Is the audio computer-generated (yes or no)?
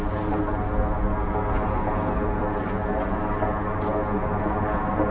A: no